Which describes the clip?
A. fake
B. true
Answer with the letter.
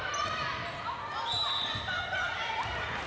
B